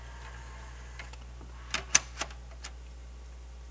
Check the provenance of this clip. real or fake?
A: real